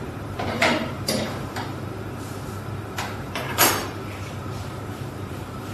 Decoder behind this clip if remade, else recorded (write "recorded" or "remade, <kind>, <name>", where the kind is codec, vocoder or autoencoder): remade, vocoder, BigVGAN v2